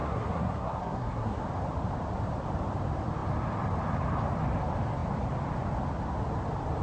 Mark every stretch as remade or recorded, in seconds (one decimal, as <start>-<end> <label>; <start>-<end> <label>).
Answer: 0.0-1.4 remade; 1.4-6.8 recorded